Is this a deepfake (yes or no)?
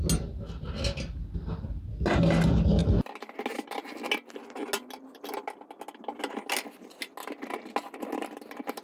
no